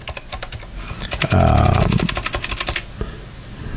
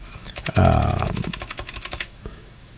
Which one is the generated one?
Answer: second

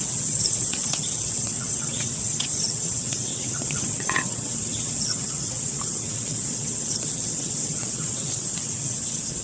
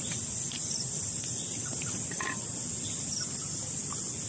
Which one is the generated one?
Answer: first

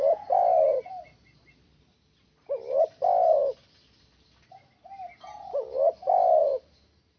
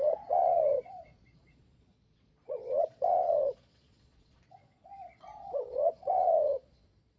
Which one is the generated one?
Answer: second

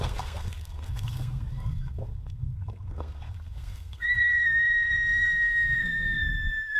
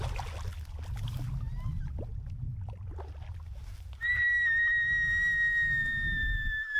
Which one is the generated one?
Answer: first